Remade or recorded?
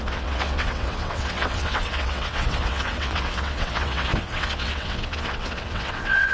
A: remade